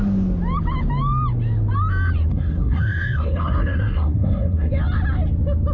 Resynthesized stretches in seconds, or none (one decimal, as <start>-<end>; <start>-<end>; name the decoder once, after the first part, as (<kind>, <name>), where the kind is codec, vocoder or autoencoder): 2.3-4.7 (codec, SNAC)